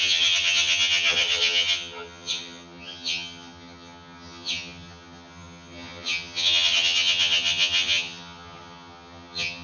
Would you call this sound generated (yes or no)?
yes